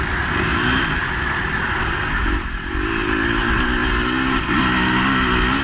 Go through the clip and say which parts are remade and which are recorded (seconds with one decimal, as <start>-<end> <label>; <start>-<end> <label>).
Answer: 0.0-5.6 recorded